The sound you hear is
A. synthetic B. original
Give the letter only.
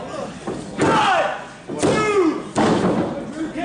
B